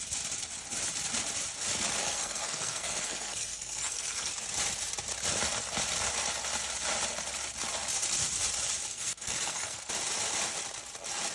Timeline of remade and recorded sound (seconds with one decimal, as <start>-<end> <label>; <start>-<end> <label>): 0.0-2.0 recorded; 2.0-4.3 remade; 4.3-8.9 recorded; 8.9-9.9 remade; 9.9-11.3 recorded